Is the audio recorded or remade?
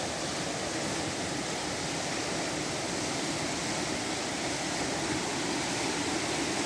recorded